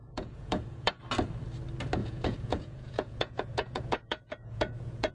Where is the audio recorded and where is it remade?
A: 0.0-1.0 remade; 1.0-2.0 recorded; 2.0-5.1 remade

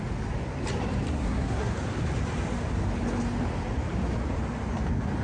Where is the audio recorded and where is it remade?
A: 0.0-1.1 recorded; 1.1-1.7 remade; 1.7-5.2 recorded

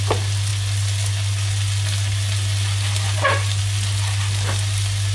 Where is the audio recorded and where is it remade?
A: 0.0-5.1 recorded

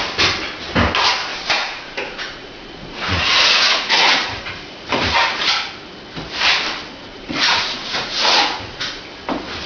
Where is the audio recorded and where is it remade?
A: 0.0-1.3 recorded; 1.3-4.5 remade; 4.5-7.1 recorded; 7.1-9.0 remade; 9.0-9.7 recorded

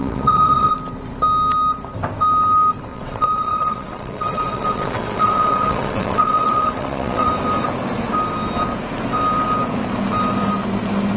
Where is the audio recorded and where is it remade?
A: 0.0-0.7 remade; 0.7-2.9 recorded; 2.9-7.3 remade; 7.3-11.2 recorded

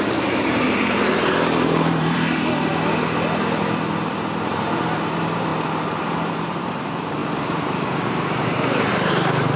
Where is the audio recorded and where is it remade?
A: 0.0-2.7 remade; 2.7-4.5 recorded; 4.5-5.5 remade; 5.5-6.0 recorded; 6.0-9.6 remade